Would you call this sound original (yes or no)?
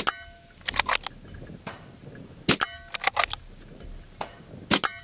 yes